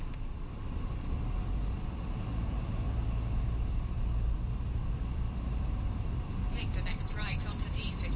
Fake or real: fake